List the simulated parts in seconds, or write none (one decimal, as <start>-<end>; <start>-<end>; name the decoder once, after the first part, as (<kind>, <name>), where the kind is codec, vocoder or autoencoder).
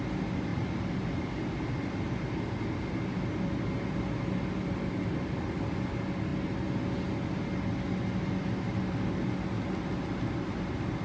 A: none